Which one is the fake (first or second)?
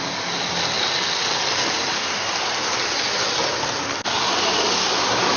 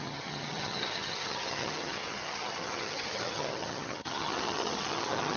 second